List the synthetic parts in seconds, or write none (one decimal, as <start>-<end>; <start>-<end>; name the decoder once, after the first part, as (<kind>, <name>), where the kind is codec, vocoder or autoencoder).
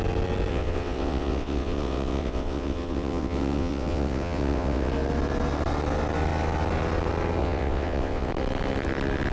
0.5-4.9 (vocoder, WaveNeXt); 7.4-8.3